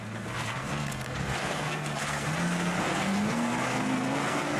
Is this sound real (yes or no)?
no